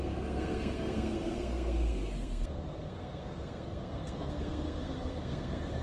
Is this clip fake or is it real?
fake